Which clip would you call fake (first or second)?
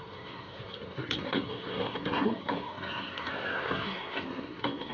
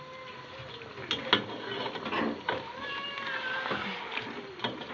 first